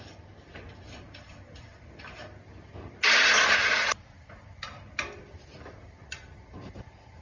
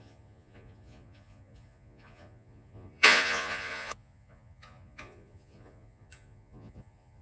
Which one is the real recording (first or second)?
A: first